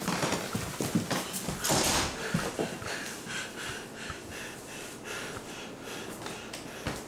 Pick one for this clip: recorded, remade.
recorded